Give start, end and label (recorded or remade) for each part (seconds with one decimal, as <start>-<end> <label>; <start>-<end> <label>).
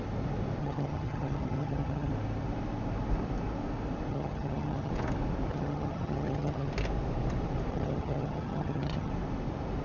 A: 0.0-0.6 recorded; 0.6-2.1 remade; 2.1-4.1 recorded; 4.1-4.9 remade; 4.9-5.5 recorded; 5.5-6.7 remade; 6.7-7.7 recorded; 7.7-9.1 remade; 9.1-9.8 recorded